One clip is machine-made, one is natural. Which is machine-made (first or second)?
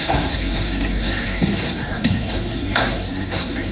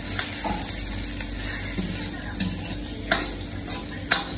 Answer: first